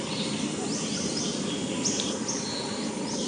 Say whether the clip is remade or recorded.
remade